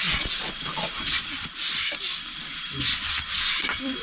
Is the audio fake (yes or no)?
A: yes